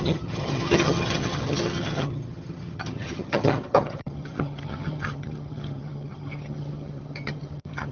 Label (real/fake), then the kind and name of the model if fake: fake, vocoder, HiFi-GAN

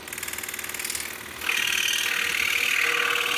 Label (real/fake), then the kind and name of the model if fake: real